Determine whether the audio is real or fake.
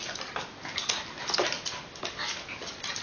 real